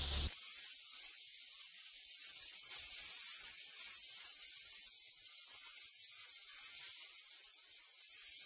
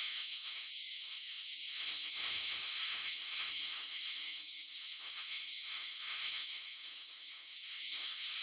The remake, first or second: second